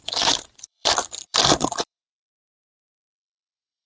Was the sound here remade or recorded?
remade